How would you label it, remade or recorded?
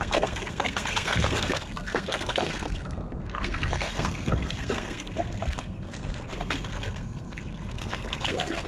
remade